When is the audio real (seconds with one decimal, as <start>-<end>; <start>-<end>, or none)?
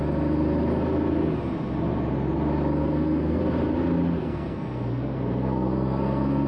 0.0-2.8; 3.4-4.2